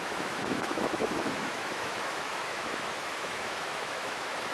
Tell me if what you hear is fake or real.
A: fake